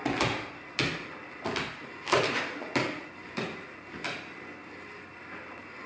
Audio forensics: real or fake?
real